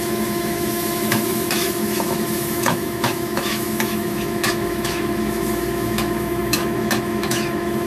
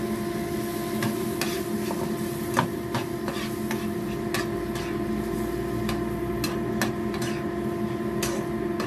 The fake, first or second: first